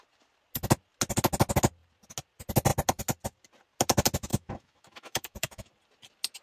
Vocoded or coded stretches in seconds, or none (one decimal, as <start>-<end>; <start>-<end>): 4.3-5.7